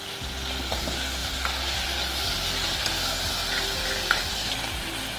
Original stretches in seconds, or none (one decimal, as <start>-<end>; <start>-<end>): 0.0-5.2